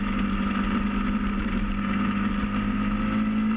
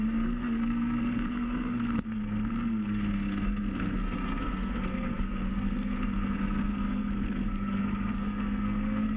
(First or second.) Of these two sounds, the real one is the first